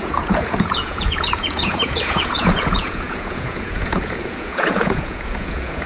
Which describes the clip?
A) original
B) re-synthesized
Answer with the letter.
B